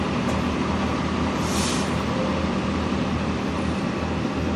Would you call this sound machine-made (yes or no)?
no